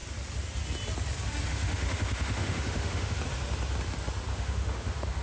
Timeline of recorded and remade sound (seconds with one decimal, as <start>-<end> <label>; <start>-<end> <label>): 0.0-1.5 recorded; 1.5-3.2 remade; 3.2-4.3 recorded; 4.3-5.2 remade